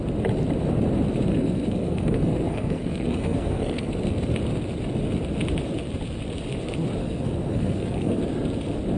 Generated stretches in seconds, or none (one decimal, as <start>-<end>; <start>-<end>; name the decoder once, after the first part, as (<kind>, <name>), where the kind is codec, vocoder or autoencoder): 1.3-3.9 (codec, SNAC); 7.0-8.2